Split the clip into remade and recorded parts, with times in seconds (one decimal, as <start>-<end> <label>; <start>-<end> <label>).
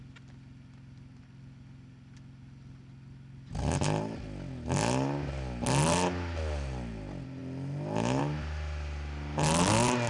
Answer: 0.0-10.1 recorded